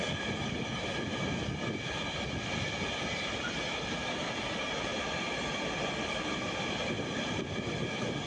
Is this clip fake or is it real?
real